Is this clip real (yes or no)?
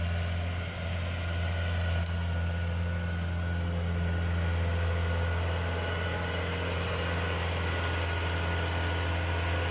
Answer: yes